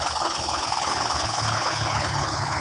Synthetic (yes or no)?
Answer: yes